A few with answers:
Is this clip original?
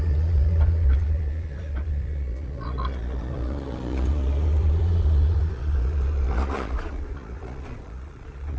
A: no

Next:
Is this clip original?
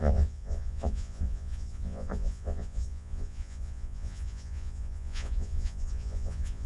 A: no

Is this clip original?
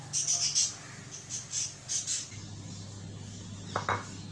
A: yes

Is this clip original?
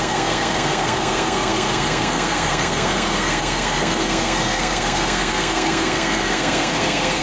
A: no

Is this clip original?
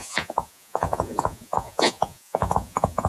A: no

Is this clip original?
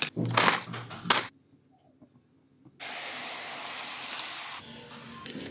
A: yes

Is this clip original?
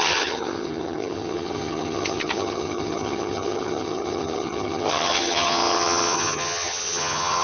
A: no